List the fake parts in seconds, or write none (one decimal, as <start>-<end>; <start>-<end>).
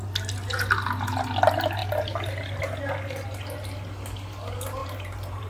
4.8-5.5